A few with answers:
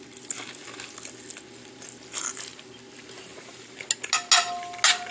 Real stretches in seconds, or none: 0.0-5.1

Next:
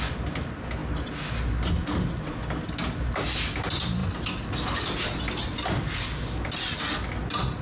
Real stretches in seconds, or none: 0.0-7.6